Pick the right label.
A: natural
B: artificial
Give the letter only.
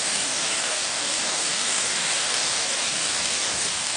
B